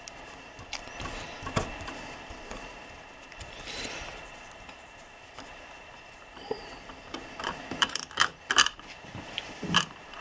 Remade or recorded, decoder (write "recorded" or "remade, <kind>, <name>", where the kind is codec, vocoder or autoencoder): remade, vocoder, BigVGAN v2